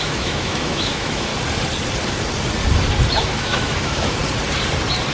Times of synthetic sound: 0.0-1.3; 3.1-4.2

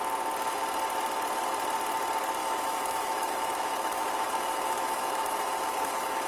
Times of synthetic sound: 2.4-6.3

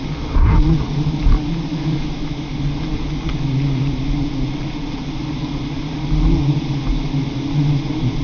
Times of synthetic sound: 1.7-2.5

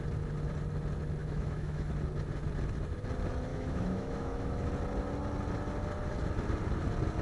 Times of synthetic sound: 1.2-1.9; 3.5-4.7